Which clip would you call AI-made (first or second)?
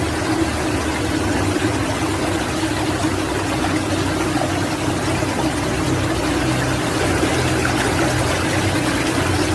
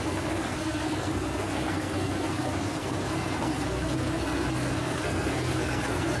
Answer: second